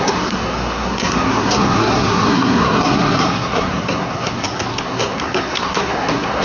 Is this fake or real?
fake